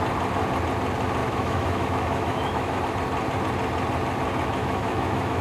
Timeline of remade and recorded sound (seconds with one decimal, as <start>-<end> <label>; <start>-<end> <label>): 0.0-1.2 recorded; 1.2-2.8 remade; 2.8-4.6 recorded; 4.6-5.4 remade